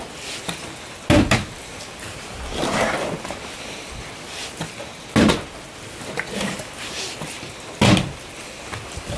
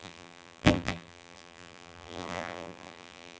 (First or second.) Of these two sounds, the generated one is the second